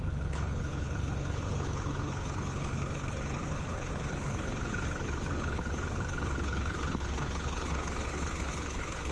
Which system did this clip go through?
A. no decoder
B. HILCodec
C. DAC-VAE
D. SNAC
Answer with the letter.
B